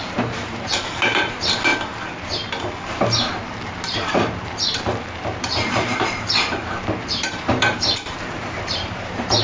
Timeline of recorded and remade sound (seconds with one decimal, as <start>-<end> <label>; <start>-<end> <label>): 0.0-1.7 remade; 1.7-2.9 recorded; 2.9-9.4 remade